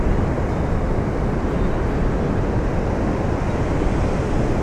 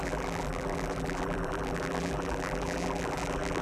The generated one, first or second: second